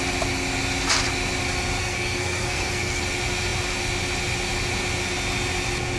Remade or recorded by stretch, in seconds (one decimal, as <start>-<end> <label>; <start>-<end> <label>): 0.0-1.8 recorded; 1.8-3.0 remade; 3.0-6.0 recorded